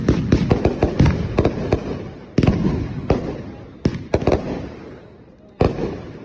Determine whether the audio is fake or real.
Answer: real